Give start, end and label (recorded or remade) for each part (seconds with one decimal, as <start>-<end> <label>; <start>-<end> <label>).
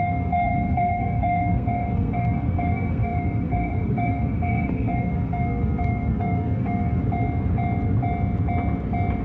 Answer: 0.0-7.0 remade; 7.0-9.2 recorded